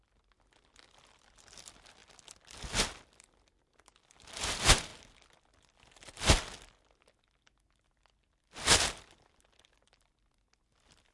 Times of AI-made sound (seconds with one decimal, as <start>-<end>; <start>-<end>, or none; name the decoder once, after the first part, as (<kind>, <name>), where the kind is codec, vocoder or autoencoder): none